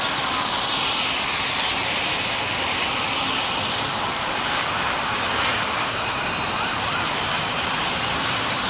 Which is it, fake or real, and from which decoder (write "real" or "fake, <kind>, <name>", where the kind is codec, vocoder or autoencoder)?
fake, vocoder, BigVGAN v2